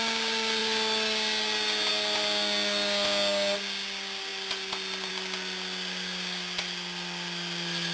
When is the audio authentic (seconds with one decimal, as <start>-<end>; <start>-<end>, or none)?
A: 0.0-7.9